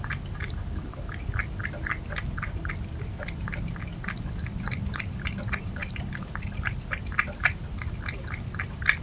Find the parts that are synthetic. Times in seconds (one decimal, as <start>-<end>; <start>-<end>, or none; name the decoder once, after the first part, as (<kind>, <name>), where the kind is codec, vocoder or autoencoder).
none